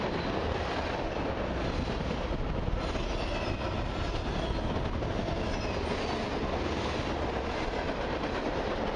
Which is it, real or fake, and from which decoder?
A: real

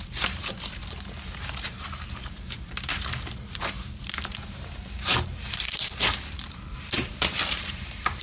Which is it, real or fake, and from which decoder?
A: fake, vocoder, BigVGAN v2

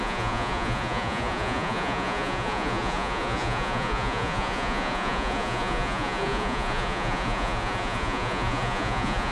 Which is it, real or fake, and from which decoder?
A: fake, vocoder, Vocos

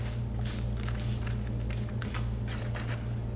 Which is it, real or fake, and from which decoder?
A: real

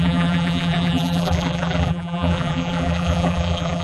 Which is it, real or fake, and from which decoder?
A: fake, vocoder, BigVGAN v2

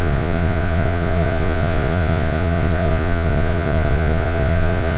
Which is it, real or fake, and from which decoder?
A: fake, vocoder, Vocos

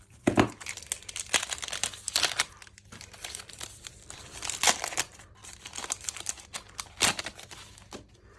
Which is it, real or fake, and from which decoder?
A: real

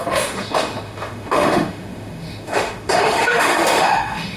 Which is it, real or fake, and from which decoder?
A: fake, autoencoder, DAC-VAE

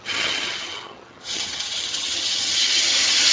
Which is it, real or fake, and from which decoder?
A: fake, vocoder, HiFi-GAN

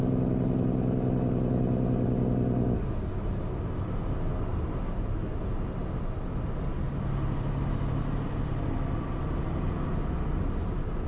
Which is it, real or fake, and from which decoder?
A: real